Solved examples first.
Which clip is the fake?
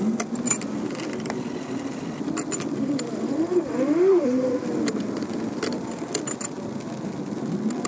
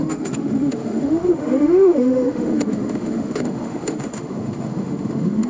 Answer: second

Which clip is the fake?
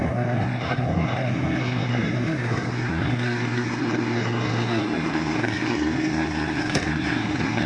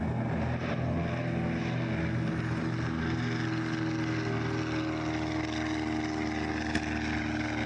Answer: first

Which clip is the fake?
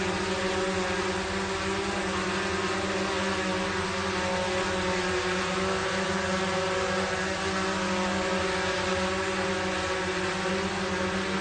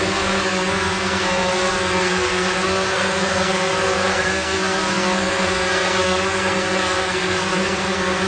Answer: second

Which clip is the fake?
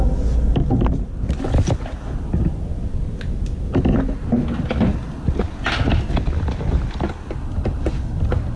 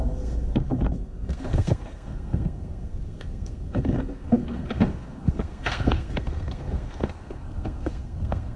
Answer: second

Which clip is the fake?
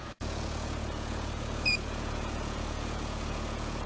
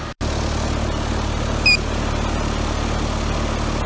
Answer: first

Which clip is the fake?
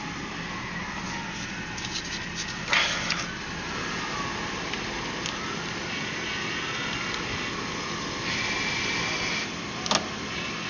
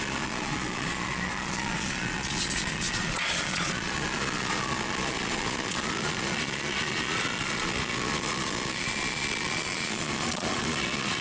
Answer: second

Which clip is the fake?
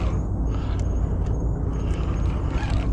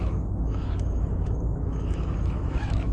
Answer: second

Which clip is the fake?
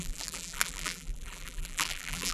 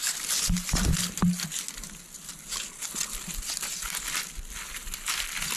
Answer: first